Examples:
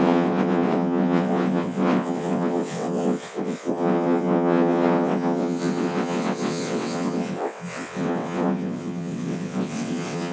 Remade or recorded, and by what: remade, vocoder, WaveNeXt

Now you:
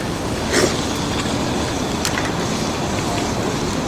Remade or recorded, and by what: recorded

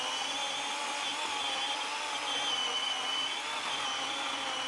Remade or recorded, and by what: recorded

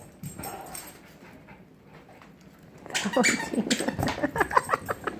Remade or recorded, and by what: recorded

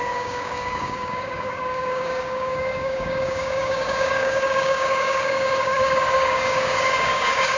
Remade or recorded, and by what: remade, codec, DAC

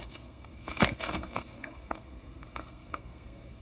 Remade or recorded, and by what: remade, codec, SNAC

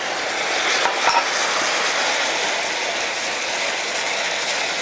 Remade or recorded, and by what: recorded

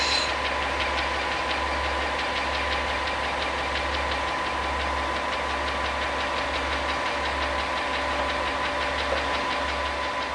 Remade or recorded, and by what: recorded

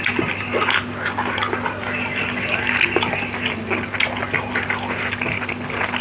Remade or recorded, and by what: recorded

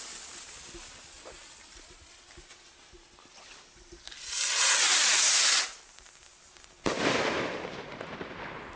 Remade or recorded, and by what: recorded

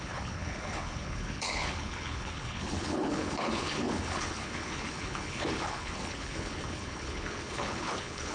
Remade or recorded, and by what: remade, codec, HILCodec